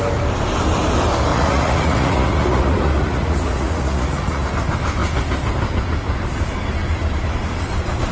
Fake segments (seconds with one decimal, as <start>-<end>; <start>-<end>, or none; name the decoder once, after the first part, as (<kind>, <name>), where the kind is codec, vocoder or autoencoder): 1.3-4.5 (vocoder, Vocos)